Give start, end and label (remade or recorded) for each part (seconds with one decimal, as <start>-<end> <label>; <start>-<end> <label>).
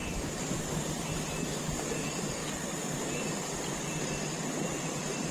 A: 0.0-2.4 remade; 2.4-4.8 recorded; 4.8-5.3 remade